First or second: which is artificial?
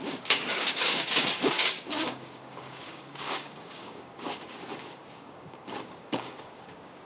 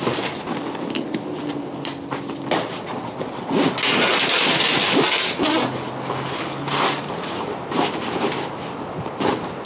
first